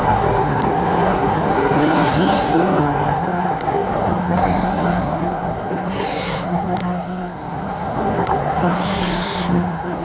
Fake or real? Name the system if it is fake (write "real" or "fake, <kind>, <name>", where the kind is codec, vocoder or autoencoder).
fake, codec, SNAC